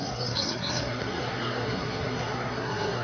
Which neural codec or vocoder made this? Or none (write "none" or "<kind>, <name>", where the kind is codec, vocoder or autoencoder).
codec, SNAC